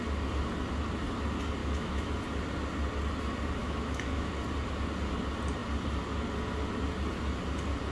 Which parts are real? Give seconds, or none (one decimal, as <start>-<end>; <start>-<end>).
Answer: 0.0-1.6; 2.1-3.6; 4.3-7.9